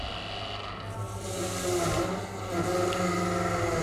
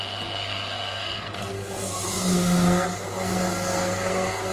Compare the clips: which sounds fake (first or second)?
second